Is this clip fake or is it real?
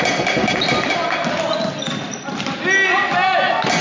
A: real